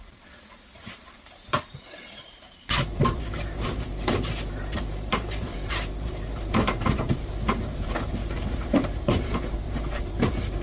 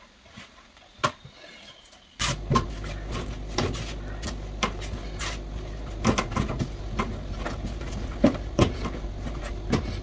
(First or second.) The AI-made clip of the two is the first